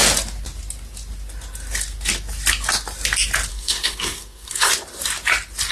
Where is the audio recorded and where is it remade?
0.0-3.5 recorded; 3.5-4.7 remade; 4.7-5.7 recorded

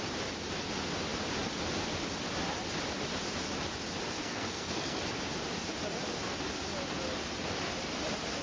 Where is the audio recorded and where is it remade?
0.0-4.2 recorded; 4.2-5.0 remade; 5.0-8.4 recorded

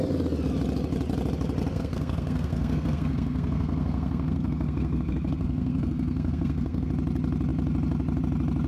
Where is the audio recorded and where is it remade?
0.0-1.7 recorded; 1.7-6.9 remade; 6.9-8.7 recorded